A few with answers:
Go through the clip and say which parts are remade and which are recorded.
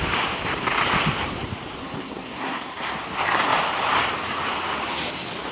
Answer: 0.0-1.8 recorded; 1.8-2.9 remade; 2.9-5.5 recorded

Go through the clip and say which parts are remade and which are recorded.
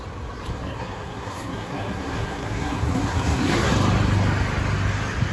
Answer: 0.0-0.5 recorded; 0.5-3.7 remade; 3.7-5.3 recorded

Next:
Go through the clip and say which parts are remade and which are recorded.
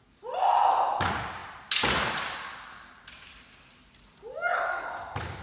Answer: 0.0-5.4 recorded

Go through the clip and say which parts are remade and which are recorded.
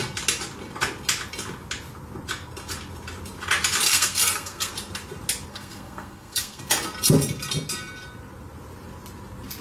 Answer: 0.0-3.9 recorded; 3.9-4.7 remade; 4.7-5.5 recorded; 5.5-6.6 remade; 6.6-9.6 recorded